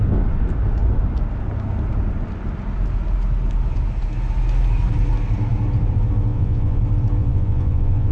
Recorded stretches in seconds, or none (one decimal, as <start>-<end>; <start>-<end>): 0.0-6.3; 6.8-7.2